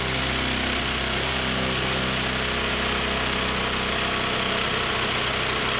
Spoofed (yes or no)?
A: no